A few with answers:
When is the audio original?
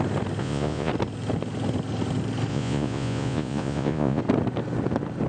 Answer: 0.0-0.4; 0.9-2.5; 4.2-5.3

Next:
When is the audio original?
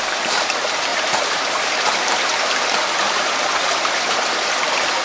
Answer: 0.0-0.9; 2.5-5.0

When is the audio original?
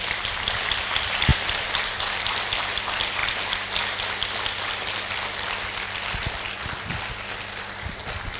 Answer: 0.0-8.4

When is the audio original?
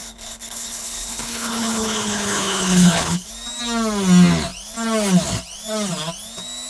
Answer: 3.3-6.7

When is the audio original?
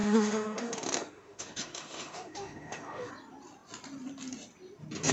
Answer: 3.1-5.1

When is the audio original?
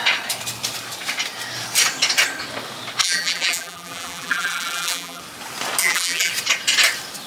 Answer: 0.0-3.0; 5.2-5.8; 6.3-7.3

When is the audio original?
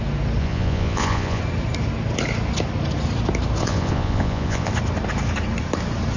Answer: 0.0-0.4; 1.4-3.6; 4.7-6.2